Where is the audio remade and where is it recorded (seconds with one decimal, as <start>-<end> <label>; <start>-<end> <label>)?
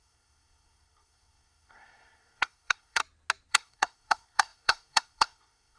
0.0-3.0 remade; 3.0-3.5 recorded; 3.5-5.8 remade